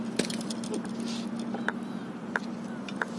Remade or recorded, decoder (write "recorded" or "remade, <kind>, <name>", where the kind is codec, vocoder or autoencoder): recorded